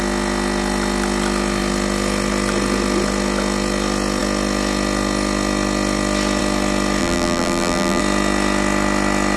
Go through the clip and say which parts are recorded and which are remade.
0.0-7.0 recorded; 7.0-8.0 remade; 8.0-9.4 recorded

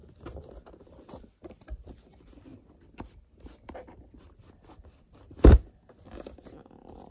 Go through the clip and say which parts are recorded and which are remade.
0.0-0.5 recorded; 0.5-7.1 remade

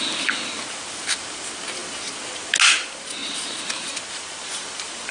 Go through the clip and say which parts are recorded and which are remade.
0.0-5.1 recorded

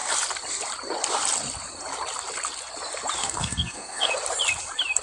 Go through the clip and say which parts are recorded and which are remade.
0.0-3.2 recorded; 3.2-4.1 remade; 4.1-5.0 recorded

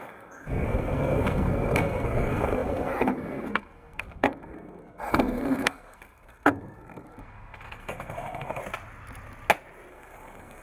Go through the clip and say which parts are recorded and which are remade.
0.0-8.6 remade; 8.6-9.9 recorded; 9.9-10.6 remade

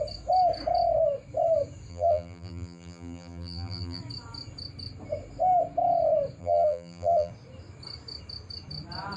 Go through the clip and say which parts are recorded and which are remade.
0.0-1.9 recorded; 1.9-4.0 remade; 4.0-6.4 recorded; 6.4-7.3 remade; 7.3-9.2 recorded

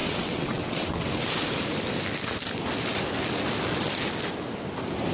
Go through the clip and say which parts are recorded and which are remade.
0.0-1.3 remade; 1.3-5.1 recorded

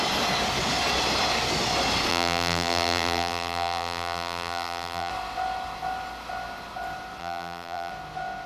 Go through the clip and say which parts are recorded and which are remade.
0.0-2.1 recorded; 2.1-5.1 remade; 5.1-7.2 recorded; 7.2-7.9 remade; 7.9-8.5 recorded